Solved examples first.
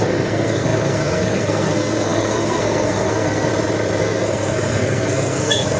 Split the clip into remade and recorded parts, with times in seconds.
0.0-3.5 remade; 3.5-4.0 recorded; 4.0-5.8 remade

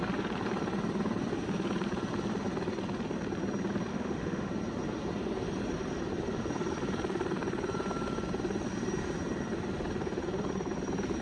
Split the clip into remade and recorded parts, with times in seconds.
0.0-3.9 recorded; 3.9-4.5 remade; 4.5-11.2 recorded